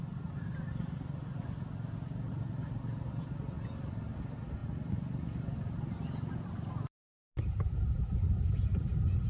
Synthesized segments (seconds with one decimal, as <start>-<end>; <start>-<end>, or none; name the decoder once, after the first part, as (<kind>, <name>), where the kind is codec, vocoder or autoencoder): 4.6-7.7 (vocoder, BigVGAN v2)